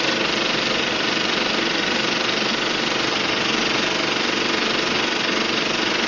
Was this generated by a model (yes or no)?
no